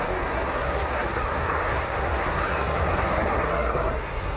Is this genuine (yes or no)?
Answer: no